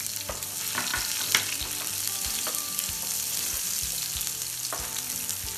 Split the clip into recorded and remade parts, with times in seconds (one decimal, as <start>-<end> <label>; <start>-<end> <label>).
0.0-0.9 recorded; 0.9-3.6 remade; 3.6-5.6 recorded